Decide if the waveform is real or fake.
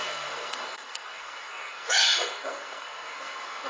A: fake